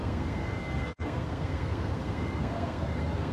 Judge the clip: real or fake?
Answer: fake